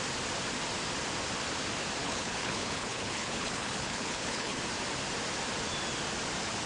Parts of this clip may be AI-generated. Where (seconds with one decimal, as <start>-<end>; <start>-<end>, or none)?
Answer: 2.0-4.6